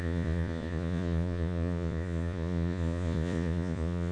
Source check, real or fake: fake